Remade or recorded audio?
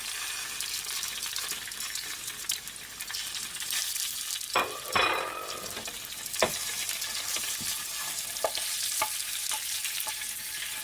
recorded